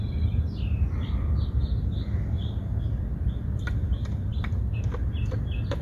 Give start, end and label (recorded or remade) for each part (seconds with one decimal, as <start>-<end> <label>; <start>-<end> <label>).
0.0-5.8 recorded